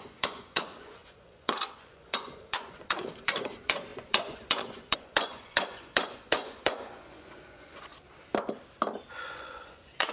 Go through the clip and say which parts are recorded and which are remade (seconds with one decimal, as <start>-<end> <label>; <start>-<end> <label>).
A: 0.0-7.9 remade; 7.9-9.1 recorded; 9.1-10.1 remade